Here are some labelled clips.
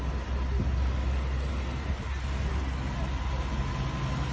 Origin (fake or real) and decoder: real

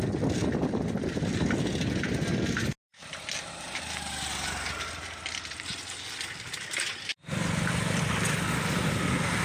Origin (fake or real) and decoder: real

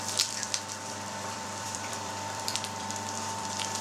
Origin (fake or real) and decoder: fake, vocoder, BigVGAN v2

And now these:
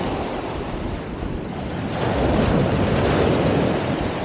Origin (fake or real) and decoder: fake, vocoder, BigVGAN v2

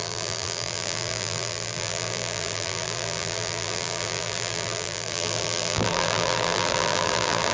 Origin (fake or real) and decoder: fake, vocoder, BigVGAN v2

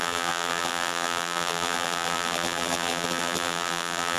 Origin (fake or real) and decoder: fake, vocoder, BigVGAN v2